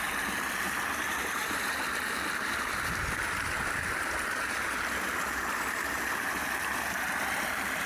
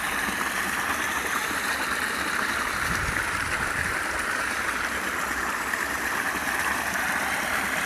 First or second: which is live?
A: first